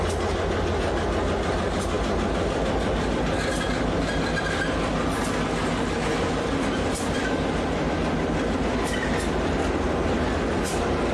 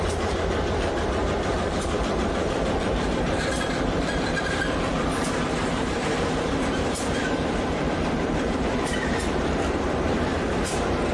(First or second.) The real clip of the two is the first